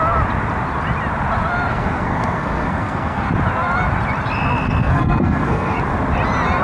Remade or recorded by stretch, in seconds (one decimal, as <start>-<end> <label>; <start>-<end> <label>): 0.0-1.7 recorded; 1.7-3.3 remade; 3.3-4.8 recorded; 4.8-5.8 remade; 5.8-6.6 recorded